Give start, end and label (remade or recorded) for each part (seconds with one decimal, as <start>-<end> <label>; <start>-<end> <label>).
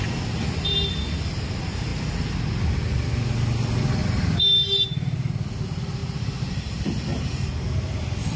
0.0-4.0 recorded; 4.0-5.3 remade; 5.3-6.0 recorded; 6.0-6.8 remade; 6.8-8.4 recorded